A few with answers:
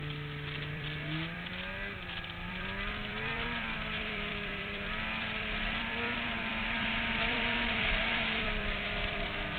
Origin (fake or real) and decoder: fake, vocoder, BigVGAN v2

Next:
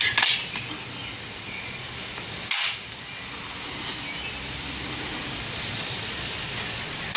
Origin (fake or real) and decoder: real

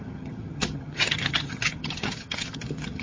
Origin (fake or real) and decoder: fake, vocoder, HiFi-GAN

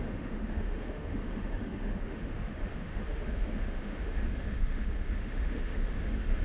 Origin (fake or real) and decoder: fake, autoencoder, DAC-VAE